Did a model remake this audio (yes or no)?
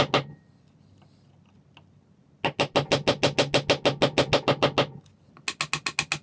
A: no